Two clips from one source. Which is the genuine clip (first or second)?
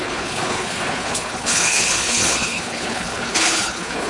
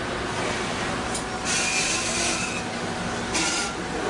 second